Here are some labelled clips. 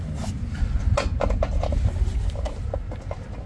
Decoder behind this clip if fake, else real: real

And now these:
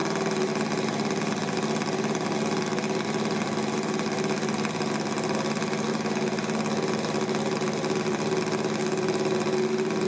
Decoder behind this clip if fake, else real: real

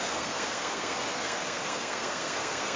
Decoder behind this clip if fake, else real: fake, codec, SNAC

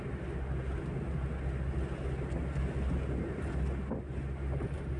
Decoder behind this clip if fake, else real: real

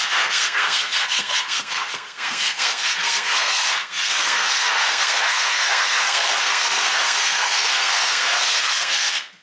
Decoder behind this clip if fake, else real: fake, codec, SNAC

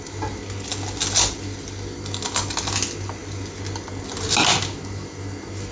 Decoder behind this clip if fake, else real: real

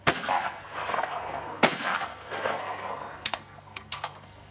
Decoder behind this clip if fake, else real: fake, codec, SNAC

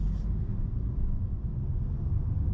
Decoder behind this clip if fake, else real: real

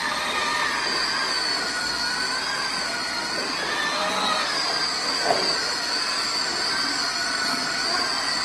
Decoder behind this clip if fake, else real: real